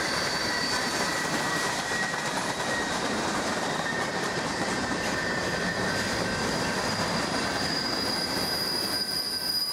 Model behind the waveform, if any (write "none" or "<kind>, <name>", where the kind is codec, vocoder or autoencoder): vocoder, BigVGAN v2